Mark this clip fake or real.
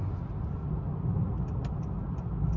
real